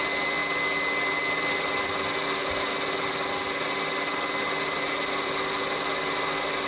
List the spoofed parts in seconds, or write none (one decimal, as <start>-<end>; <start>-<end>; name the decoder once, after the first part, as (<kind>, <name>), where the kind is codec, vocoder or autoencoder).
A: none